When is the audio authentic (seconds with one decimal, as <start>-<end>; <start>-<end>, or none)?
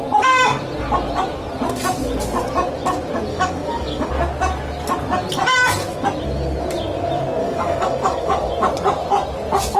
0.0-3.3; 4.1-7.4; 8.5-9.8